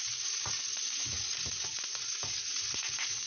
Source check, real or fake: fake